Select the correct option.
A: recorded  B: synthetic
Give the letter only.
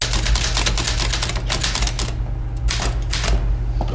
A